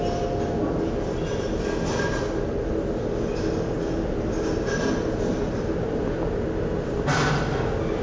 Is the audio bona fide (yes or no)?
yes